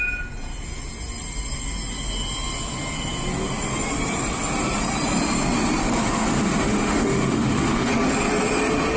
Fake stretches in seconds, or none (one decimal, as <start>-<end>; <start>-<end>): 5.8-7.9